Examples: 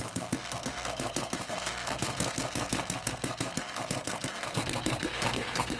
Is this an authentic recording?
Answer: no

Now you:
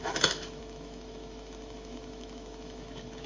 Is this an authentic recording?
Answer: no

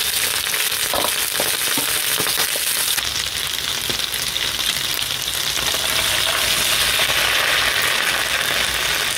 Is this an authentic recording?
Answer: yes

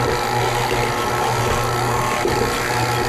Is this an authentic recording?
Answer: yes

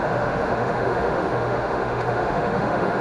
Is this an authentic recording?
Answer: no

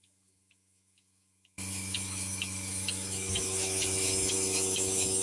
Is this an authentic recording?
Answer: no